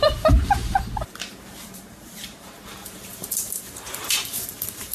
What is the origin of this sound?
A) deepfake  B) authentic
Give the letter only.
A